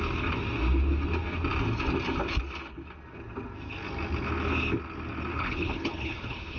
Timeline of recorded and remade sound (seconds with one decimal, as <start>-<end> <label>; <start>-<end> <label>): 0.0-5.3 recorded; 5.3-6.6 remade